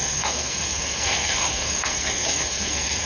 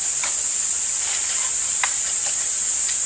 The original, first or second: second